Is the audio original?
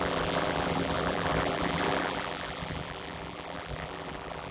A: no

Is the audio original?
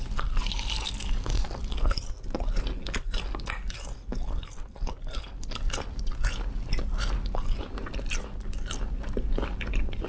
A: yes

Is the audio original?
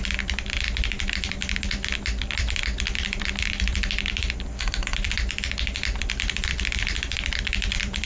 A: no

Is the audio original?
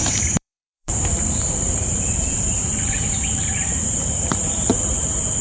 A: no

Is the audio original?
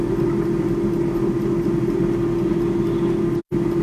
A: yes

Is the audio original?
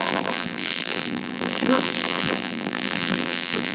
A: no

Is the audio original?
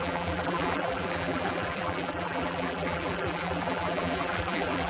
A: no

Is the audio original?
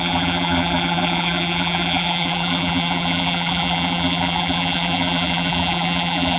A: no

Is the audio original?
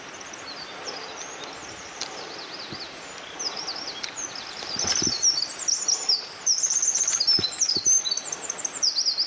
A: no